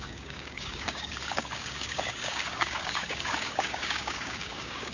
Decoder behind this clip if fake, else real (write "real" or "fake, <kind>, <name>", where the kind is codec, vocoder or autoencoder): fake, codec, DAC